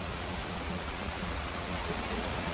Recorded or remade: remade